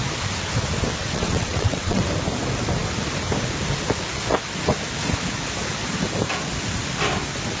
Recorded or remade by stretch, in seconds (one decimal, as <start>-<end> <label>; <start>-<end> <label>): 0.0-1.0 recorded; 1.0-2.0 remade; 2.0-7.6 recorded